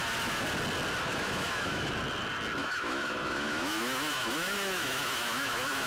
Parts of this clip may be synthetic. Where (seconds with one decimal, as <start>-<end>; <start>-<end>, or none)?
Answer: 1.1-1.9; 2.6-5.9